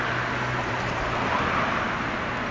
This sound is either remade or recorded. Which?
recorded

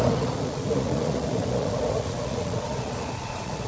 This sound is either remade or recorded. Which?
remade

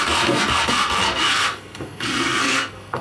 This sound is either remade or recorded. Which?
remade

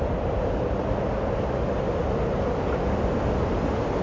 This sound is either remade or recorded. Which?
recorded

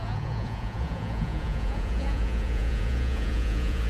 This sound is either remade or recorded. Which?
remade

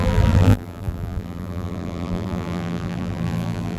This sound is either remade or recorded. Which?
remade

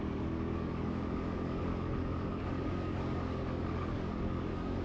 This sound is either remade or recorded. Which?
remade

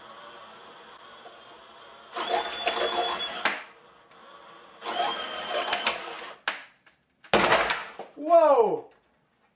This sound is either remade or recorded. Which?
recorded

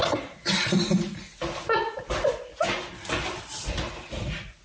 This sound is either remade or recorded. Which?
recorded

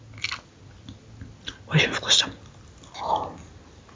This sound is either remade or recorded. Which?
recorded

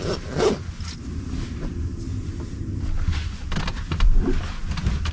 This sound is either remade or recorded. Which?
recorded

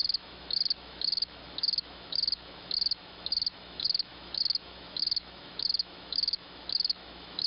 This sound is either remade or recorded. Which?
remade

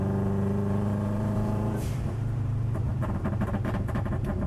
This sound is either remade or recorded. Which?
remade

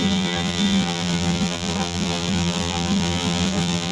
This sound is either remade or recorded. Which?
remade